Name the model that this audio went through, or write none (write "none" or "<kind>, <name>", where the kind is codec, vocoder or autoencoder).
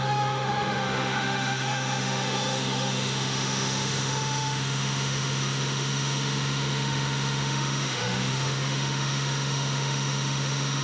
autoencoder, DAC-VAE